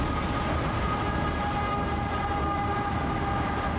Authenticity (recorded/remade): recorded